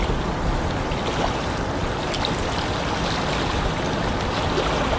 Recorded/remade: recorded